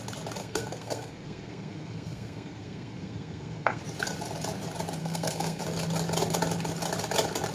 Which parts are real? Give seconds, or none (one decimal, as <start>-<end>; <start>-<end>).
0.0-0.4; 3.8-5.0; 5.6-7.5